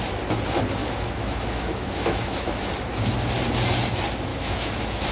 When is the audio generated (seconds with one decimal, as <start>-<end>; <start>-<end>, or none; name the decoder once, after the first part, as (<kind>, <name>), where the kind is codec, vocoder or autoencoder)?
0.8-2.7 (autoencoder, DAC-VAE); 4.3-5.1